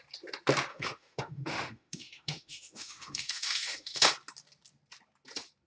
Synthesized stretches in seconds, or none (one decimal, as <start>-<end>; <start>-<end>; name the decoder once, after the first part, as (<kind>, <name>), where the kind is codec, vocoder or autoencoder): 0.7-4.1 (autoencoder, DAC-VAE)